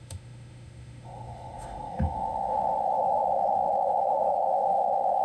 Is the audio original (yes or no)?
no